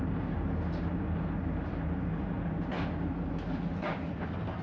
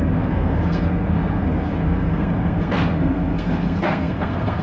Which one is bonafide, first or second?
first